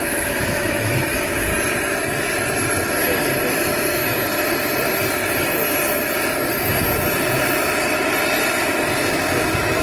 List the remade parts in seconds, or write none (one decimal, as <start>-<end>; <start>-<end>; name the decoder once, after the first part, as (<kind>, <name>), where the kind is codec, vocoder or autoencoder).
0.0-1.5 (autoencoder, DAC-VAE); 3.5-4.0; 9.1-9.8